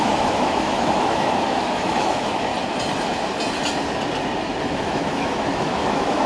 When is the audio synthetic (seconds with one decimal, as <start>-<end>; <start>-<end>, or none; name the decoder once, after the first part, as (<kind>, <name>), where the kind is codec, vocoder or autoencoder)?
0.0-2.5 (autoencoder, DAC-VAE); 4.6-6.3